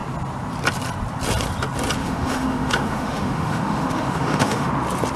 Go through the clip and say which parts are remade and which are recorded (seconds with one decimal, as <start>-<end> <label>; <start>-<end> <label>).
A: 0.0-2.0 recorded; 2.0-4.7 remade; 4.7-5.2 recorded